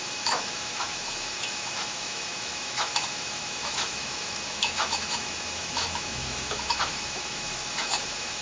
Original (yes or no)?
no